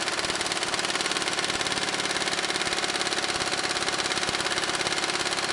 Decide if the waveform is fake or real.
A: fake